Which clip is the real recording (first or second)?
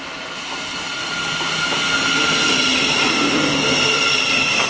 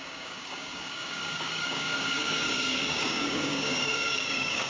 first